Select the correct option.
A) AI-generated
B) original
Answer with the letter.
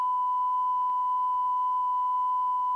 B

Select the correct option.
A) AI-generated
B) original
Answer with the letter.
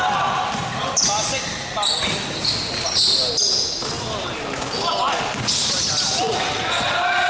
B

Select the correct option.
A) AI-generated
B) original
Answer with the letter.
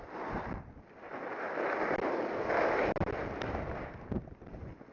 B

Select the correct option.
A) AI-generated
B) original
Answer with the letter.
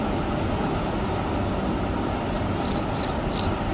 B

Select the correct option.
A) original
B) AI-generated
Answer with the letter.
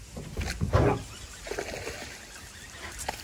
A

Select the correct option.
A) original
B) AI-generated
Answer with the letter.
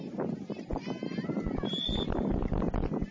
A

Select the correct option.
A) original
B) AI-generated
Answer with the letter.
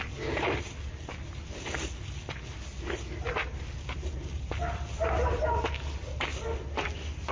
A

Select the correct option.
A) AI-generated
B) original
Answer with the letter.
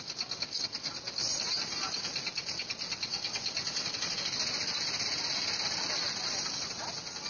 B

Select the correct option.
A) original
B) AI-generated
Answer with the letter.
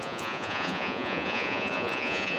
B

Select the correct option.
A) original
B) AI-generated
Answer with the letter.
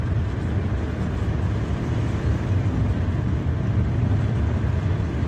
A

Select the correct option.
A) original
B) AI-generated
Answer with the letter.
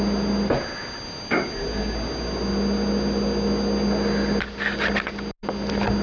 A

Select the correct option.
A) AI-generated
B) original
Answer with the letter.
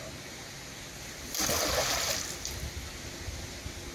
B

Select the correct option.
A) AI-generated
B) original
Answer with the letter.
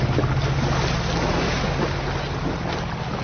B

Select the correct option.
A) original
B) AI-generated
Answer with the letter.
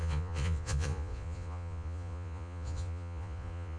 B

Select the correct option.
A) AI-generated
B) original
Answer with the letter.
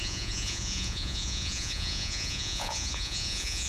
A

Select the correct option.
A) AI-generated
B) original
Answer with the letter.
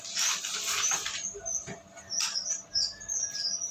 B